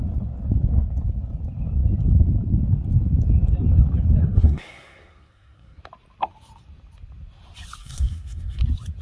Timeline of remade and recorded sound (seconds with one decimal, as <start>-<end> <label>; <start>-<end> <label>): 0.0-4.2 recorded; 4.2-5.8 remade; 5.8-7.8 recorded; 7.8-8.6 remade; 8.6-9.0 recorded